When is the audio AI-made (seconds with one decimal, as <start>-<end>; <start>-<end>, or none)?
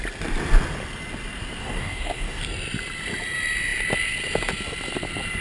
1.6-2.4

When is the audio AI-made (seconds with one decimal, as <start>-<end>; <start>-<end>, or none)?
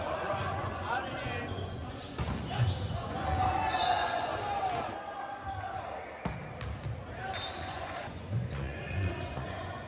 0.0-4.3; 7.5-9.9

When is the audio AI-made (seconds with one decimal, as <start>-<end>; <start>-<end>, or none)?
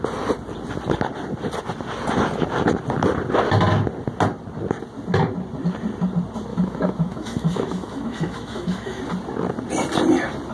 6.5-9.0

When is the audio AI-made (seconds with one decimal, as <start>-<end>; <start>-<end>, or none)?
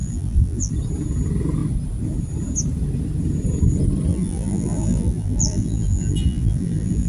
0.0-0.7; 4.1-7.1